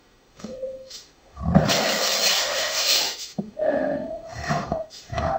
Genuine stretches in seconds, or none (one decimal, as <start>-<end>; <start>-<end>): 1.4-2.4